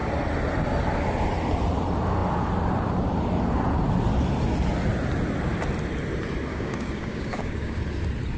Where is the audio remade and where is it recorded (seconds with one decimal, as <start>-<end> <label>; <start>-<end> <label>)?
0.0-6.5 recorded; 6.5-7.8 remade; 7.8-8.4 recorded